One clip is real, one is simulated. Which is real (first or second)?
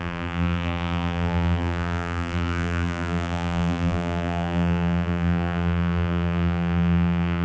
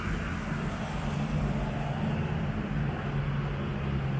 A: second